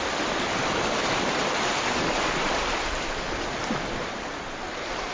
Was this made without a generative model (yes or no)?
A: yes